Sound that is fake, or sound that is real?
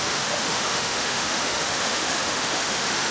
fake